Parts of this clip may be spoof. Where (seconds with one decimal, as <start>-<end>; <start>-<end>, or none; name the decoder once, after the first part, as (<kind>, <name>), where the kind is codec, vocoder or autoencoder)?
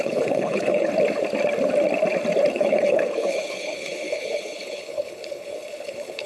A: 0.0-0.9 (codec, HILCodec); 2.5-6.3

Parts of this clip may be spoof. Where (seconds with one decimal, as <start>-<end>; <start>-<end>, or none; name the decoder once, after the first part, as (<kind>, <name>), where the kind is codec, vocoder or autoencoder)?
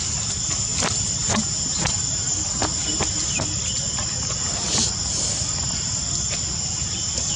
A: none